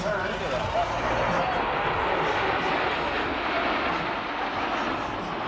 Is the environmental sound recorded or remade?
recorded